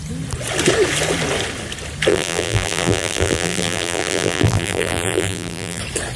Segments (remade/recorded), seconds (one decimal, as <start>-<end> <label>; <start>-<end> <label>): 0.0-2.1 recorded; 2.1-5.8 remade; 5.8-6.2 recorded